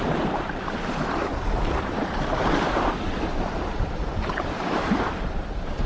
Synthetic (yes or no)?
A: yes